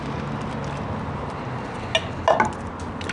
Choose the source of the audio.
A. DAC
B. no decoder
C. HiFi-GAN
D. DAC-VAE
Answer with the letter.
B